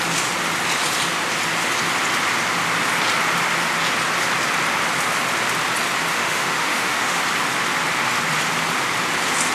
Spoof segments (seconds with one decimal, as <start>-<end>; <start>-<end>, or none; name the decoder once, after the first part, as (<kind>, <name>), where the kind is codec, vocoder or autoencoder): 6.1-7.2 (autoencoder, DAC-VAE)